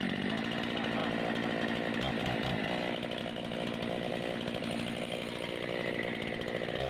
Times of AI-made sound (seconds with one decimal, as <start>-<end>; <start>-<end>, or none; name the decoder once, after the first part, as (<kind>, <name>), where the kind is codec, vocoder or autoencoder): 4.1-4.6 (vocoder, BigVGAN v2)